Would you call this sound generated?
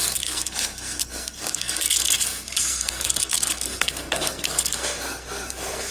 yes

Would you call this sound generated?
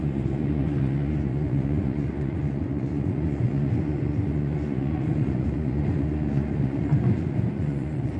yes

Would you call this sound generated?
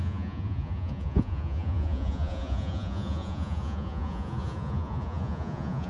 yes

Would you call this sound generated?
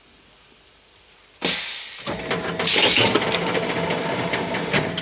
no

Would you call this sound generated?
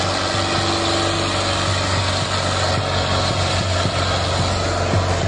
no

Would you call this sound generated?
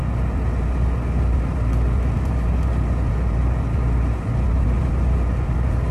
no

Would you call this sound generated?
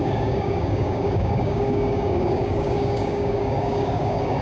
yes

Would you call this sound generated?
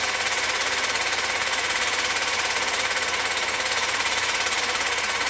yes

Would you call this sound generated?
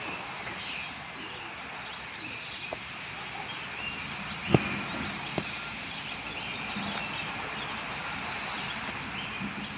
no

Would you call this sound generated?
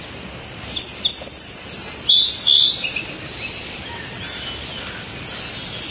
no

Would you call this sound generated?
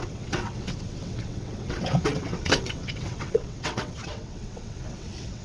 yes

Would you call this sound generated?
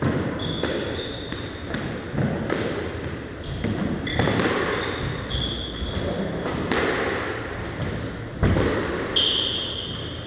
no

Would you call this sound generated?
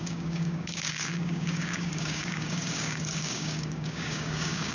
yes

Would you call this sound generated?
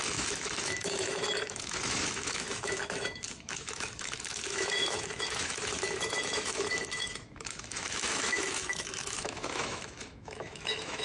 yes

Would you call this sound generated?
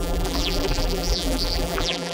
yes